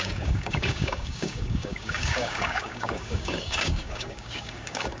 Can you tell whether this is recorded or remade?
remade